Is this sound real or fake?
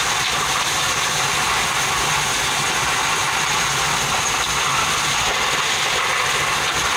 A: real